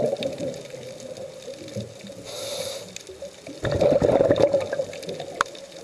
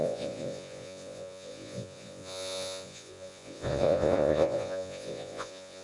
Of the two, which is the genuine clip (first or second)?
first